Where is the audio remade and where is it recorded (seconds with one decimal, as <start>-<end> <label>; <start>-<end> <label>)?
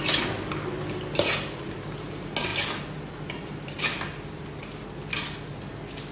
0.0-6.1 recorded